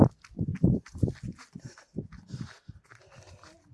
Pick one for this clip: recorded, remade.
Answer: recorded